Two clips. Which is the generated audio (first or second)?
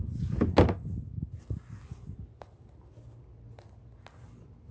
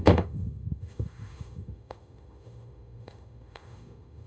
second